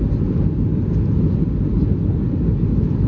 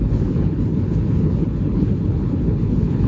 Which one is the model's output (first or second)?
second